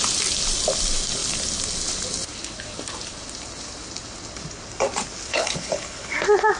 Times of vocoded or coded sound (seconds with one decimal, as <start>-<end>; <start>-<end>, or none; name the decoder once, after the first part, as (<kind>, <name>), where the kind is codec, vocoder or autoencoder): 5.3-6.1 (codec, HILCodec)